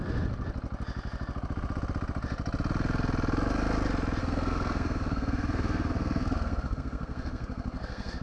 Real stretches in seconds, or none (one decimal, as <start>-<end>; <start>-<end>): 0.0-4.2